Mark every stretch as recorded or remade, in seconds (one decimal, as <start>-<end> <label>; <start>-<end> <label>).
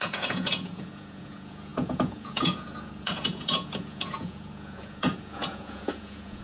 0.0-6.4 remade